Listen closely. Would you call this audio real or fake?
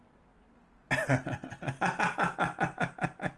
real